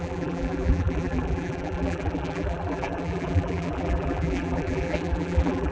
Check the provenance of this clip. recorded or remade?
remade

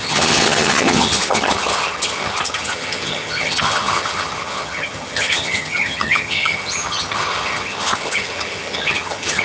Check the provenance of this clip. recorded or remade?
remade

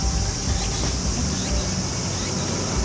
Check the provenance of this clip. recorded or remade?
recorded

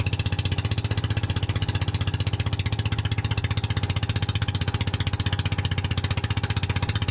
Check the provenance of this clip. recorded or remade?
recorded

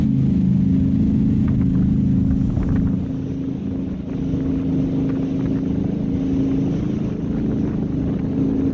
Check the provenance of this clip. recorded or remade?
recorded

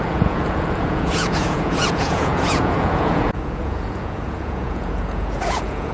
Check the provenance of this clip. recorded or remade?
remade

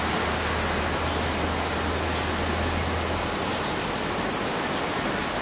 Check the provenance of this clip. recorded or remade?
recorded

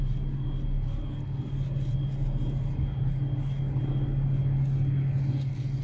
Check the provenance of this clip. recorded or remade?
recorded